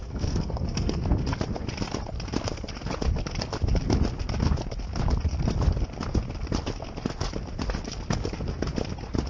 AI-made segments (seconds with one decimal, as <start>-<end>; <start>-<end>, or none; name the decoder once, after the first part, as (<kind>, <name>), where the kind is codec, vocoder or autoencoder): 0.0-1.0 (codec, SNAC)